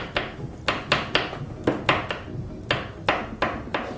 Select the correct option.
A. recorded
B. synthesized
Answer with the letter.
A